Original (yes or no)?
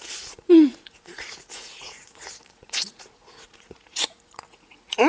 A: no